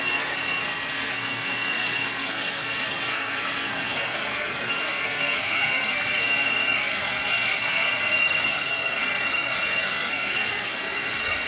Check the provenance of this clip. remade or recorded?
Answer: remade